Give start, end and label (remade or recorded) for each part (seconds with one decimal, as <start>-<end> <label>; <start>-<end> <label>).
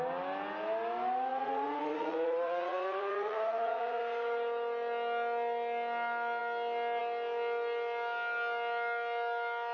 0.0-1.3 recorded; 1.3-4.0 remade; 4.0-9.7 recorded